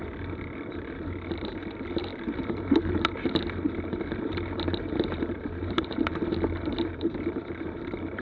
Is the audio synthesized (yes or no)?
yes